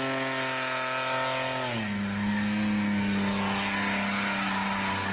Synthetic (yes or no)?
no